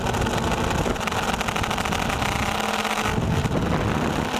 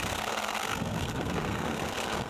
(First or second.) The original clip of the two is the first